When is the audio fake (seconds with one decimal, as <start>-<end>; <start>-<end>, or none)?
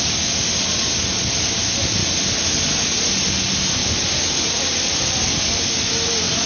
none